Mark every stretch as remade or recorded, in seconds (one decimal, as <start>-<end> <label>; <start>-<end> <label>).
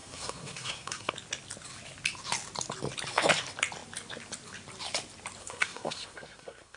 0.0-1.1 remade; 1.1-5.4 recorded; 5.4-6.8 remade